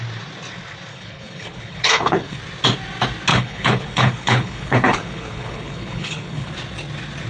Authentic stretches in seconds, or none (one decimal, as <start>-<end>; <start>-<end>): 0.0-0.9; 2.4-3.3; 6.5-7.3